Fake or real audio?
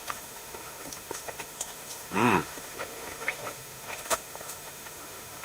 fake